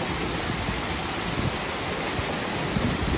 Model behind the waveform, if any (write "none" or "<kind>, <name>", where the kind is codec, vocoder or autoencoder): none